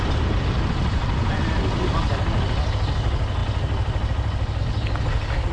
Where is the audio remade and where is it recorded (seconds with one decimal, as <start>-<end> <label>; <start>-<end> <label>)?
0.0-5.5 recorded